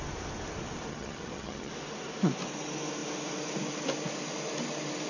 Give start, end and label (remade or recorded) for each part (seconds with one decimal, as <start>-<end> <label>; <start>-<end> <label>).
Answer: 0.0-0.9 recorded; 0.9-1.7 remade; 1.7-5.1 recorded